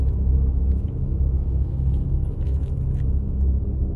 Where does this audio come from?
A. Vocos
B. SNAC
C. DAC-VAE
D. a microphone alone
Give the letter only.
C